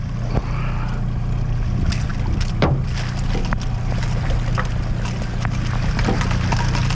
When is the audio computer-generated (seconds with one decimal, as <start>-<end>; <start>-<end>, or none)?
none